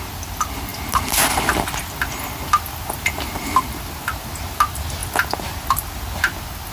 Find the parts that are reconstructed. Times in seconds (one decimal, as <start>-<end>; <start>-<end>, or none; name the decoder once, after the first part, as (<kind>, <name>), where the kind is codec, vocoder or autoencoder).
none